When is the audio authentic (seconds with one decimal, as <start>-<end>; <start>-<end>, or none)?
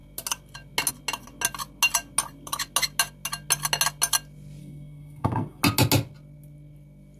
0.0-4.6; 5.6-7.2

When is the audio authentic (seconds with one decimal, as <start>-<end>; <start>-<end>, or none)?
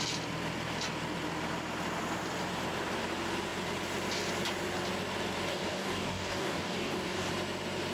0.0-5.5; 7.3-7.9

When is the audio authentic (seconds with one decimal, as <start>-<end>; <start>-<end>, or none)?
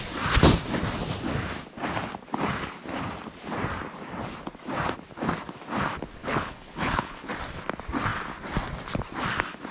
0.0-6.2; 7.3-9.7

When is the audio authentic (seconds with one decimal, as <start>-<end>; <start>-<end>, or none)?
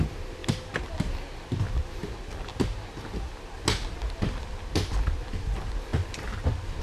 0.0-6.8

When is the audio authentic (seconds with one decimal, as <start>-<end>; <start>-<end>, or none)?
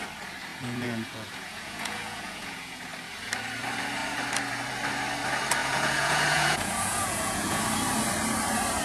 0.0-0.5; 2.8-5.6; 7.6-8.8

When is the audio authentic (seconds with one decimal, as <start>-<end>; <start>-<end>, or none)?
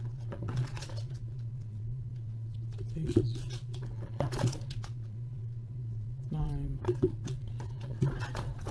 none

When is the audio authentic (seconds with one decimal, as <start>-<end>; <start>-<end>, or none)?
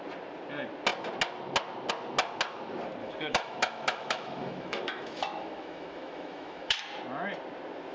0.0-3.0; 6.8-7.9